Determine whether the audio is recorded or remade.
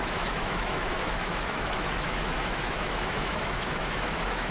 remade